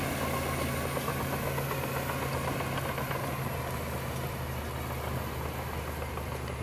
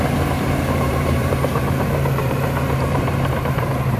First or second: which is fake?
second